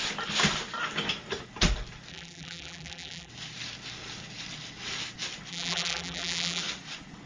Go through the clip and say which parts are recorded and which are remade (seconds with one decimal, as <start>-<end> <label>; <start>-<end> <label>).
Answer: 0.0-2.1 recorded; 2.1-3.3 remade; 3.3-5.5 recorded; 5.5-6.6 remade; 6.6-7.3 recorded